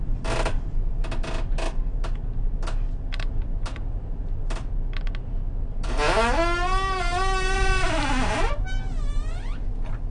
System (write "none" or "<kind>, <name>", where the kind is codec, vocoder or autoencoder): none